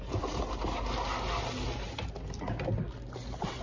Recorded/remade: recorded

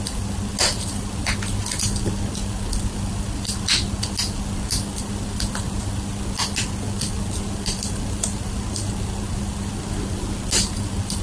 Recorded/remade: recorded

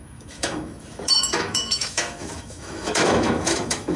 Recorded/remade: remade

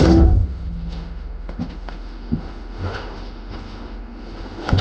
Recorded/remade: remade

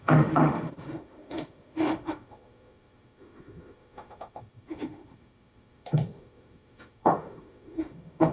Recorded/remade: remade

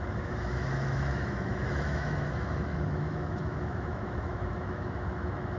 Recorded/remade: remade